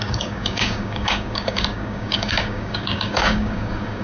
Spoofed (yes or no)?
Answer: yes